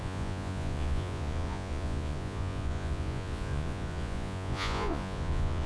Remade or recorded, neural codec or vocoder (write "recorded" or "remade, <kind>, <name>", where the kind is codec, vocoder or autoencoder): remade, vocoder, Vocos